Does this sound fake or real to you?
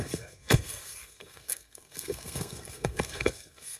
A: fake